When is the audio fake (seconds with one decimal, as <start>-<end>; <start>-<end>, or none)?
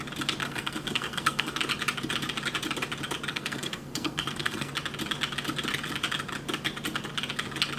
0.4-1.6; 3.3-4.7